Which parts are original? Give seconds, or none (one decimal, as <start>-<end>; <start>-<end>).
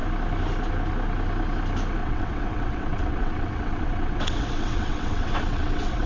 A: 0.0-2.0